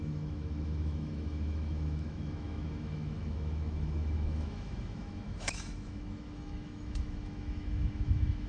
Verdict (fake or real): fake